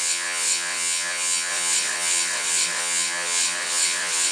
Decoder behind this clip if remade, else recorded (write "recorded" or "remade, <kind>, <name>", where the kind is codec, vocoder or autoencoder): remade, vocoder, WaveNeXt